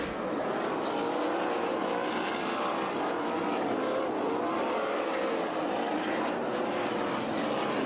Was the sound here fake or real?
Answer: real